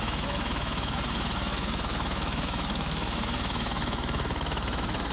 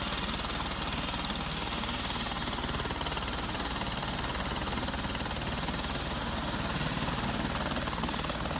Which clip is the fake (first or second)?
first